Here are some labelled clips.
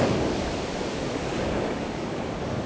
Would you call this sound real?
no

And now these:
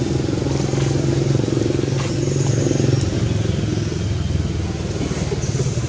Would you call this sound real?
yes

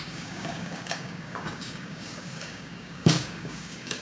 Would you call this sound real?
no